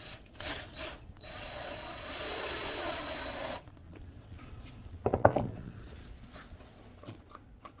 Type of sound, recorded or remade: remade